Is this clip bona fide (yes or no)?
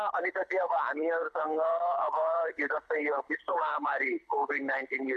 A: no